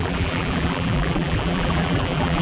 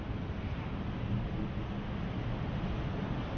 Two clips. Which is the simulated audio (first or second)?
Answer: first